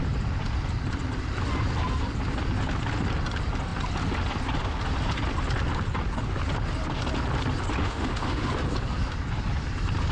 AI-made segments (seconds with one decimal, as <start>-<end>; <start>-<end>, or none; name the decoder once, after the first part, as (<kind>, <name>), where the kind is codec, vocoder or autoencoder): 7.8-8.5 (autoencoder, DAC-VAE)